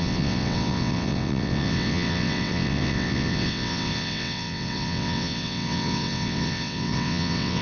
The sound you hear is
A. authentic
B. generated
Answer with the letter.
B